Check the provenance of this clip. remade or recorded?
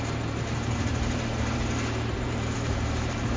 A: remade